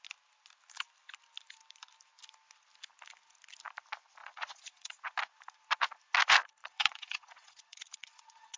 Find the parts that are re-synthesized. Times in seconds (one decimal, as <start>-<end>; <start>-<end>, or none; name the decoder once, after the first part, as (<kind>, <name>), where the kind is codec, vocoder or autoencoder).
4.2-5.1 (vocoder, Vocos); 6.6-8.6